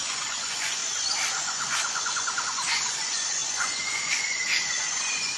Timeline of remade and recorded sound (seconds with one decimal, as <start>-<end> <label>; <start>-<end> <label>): 0.0-0.8 remade; 0.8-1.3 recorded; 1.3-5.4 remade